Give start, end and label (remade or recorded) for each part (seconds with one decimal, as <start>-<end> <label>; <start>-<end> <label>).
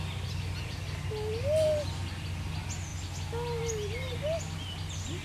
0.0-5.2 recorded